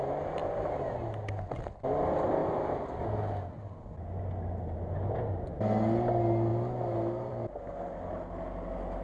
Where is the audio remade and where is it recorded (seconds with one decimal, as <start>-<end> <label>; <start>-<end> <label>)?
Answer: 0.0-9.0 recorded